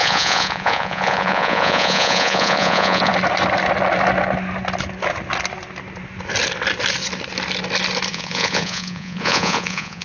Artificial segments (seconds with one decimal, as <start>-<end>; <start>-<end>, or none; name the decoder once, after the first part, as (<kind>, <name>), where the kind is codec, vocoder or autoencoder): 0.0-3.1 (vocoder, Vocos); 8.1-10.0